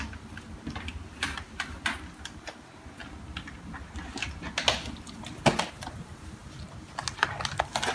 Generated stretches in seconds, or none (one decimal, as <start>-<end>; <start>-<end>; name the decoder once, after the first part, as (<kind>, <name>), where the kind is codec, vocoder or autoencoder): none

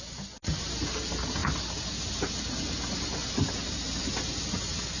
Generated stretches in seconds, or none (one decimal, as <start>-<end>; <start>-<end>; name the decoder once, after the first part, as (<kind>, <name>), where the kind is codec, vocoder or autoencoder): none

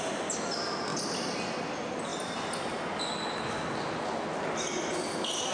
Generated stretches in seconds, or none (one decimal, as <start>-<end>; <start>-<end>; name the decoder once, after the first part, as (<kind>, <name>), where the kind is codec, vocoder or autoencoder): 0.9-1.5 (vocoder, BigVGAN v2)

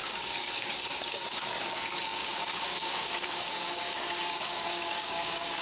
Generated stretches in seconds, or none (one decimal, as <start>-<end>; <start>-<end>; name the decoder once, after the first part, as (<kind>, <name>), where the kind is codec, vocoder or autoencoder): 0.0-5.6 (codec, DAC)